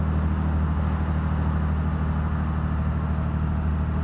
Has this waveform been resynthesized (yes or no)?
no